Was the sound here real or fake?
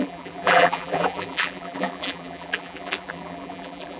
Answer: fake